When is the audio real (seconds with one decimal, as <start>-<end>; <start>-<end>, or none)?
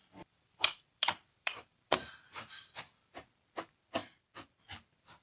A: 3.1-4.0; 4.6-5.2